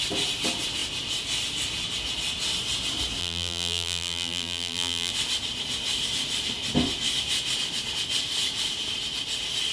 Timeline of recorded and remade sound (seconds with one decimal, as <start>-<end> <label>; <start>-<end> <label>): 0.0-3.2 recorded; 3.2-5.1 remade; 5.1-9.7 recorded